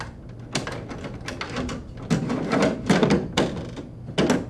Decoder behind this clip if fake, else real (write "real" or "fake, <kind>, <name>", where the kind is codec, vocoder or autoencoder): real